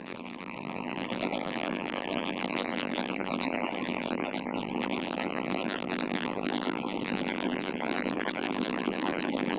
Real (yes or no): no